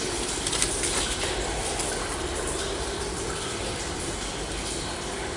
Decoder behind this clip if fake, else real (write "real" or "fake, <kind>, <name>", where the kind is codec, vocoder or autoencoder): real